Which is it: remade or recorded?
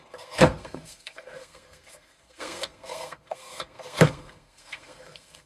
remade